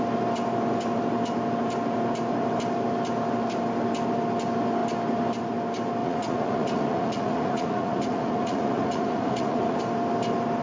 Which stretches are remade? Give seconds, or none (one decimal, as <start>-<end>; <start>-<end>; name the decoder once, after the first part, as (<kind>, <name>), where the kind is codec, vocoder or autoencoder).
6.0-9.8 (vocoder, Vocos)